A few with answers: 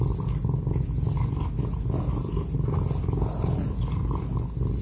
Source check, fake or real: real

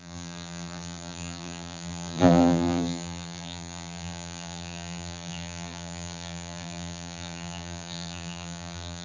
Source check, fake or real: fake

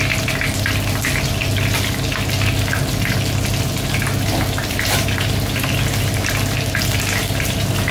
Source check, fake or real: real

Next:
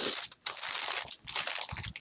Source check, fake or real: real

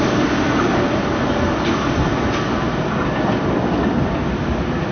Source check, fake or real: real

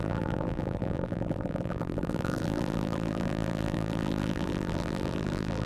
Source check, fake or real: fake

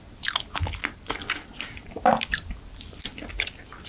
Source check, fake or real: real